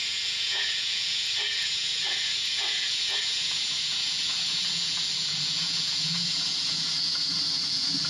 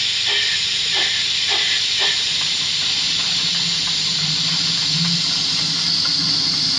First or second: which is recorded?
second